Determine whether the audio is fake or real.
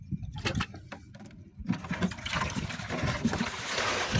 real